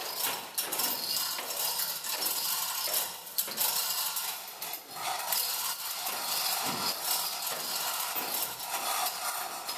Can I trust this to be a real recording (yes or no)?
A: yes